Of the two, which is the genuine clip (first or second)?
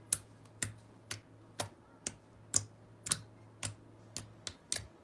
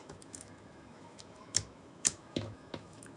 first